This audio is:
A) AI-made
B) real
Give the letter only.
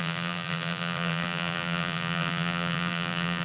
A